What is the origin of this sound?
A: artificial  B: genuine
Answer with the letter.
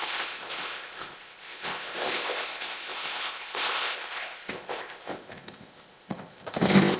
A